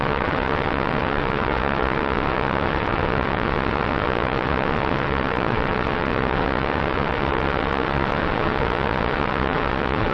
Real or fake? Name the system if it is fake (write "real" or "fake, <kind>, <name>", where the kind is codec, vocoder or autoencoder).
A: fake, vocoder, WaveNeXt